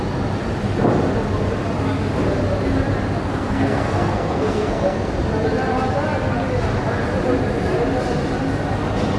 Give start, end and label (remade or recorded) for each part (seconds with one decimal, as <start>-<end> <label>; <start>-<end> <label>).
0.0-3.2 recorded; 3.2-5.1 remade; 5.1-9.2 recorded